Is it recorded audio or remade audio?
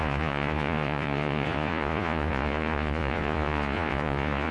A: remade